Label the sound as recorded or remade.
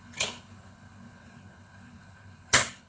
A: remade